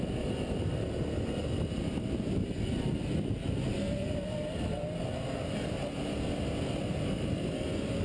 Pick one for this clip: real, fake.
real